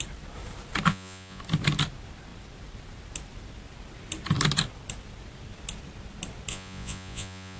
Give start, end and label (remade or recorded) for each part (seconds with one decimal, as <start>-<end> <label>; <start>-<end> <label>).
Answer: 0.0-0.9 recorded; 0.9-1.4 remade; 1.4-6.5 recorded; 6.5-7.6 remade